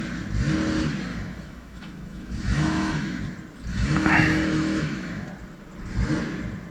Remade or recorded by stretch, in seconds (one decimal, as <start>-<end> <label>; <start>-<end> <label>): 0.0-1.1 recorded; 1.1-3.2 remade; 3.2-3.7 recorded; 3.7-5.3 remade; 5.3-6.7 recorded